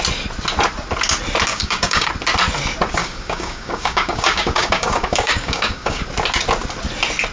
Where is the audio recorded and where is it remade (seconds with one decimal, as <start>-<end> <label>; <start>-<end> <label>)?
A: 0.0-1.5 recorded; 1.5-2.1 remade; 2.1-3.0 recorded; 3.0-6.0 remade; 6.0-7.3 recorded